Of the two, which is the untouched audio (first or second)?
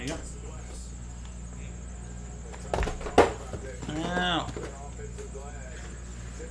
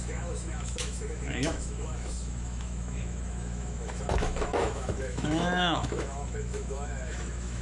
first